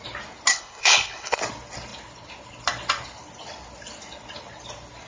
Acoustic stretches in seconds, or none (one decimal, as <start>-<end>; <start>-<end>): 0.0-0.5; 1.4-5.1